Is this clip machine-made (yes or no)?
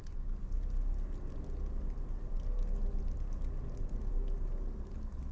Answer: no